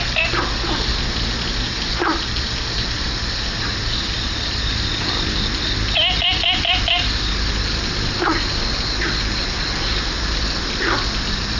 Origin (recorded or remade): recorded